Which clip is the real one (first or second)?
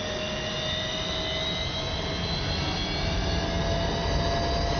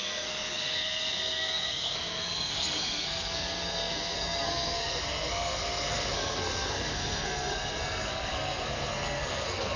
first